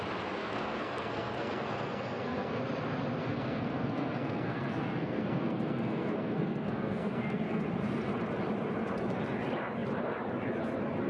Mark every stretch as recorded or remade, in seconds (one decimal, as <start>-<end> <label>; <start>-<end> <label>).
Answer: 0.0-0.4 recorded; 0.4-2.6 remade; 2.6-3.2 recorded; 3.2-7.6 remade; 7.6-11.1 recorded

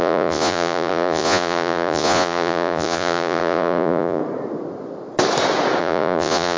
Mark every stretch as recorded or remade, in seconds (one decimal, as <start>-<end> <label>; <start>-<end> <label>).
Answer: 0.0-4.2 remade; 4.2-5.8 recorded; 5.8-6.6 remade

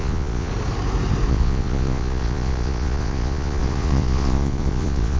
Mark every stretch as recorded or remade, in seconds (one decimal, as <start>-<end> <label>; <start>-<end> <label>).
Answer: 0.0-0.5 remade; 0.5-1.3 recorded; 1.3-5.2 remade

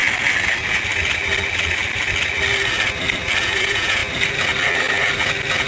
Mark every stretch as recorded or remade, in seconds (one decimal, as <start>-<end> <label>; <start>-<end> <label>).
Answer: 0.0-3.4 recorded; 3.4-4.0 remade; 4.0-5.7 recorded

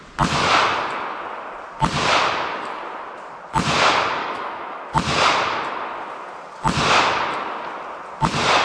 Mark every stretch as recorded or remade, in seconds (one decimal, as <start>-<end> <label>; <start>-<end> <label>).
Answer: 0.0-4.2 recorded; 4.2-4.9 remade; 4.9-8.6 recorded